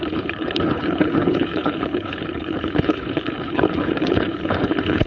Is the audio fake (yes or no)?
yes